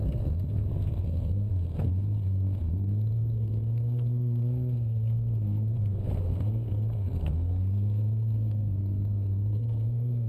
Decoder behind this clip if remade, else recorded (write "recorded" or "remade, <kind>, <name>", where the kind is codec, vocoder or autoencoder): remade, codec, SNAC